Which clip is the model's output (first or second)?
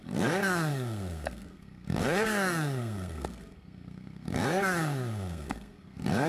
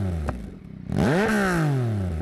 first